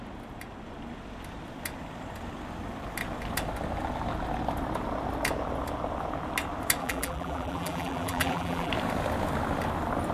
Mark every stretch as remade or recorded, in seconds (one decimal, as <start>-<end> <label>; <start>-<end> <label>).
0.0-6.8 recorded; 6.8-8.7 remade; 8.7-10.1 recorded